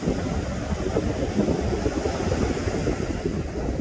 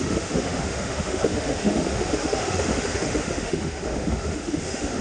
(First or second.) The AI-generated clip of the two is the second